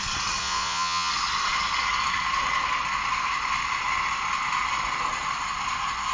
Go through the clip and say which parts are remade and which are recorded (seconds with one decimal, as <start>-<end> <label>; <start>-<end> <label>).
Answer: 0.0-0.4 recorded; 0.4-1.1 remade; 1.1-6.1 recorded